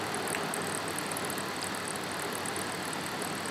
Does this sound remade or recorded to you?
remade